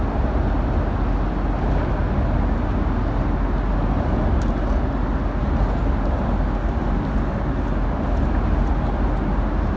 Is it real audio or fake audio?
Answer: real